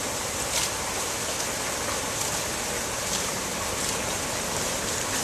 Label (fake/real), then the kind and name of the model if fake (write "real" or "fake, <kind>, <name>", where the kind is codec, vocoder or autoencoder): real